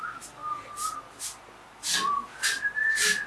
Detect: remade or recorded recorded